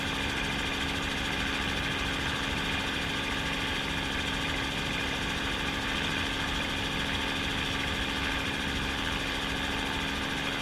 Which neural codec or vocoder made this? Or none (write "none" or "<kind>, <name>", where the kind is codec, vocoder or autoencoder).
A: none